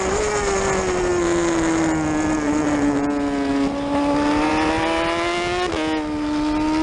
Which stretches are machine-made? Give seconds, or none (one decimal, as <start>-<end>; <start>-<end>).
none